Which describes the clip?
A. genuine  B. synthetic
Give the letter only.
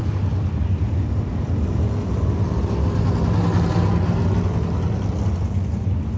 A